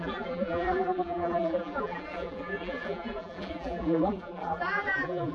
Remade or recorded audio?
remade